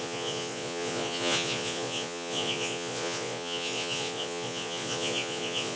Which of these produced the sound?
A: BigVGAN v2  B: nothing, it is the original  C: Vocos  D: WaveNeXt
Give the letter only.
C